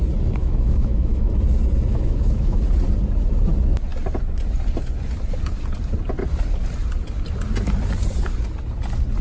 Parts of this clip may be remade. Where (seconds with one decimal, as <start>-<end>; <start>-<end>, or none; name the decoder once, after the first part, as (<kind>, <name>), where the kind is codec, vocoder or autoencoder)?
0.4-1.3 (autoencoder, DAC-VAE); 1.9-2.6